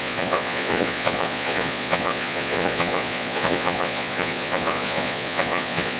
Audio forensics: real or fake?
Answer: fake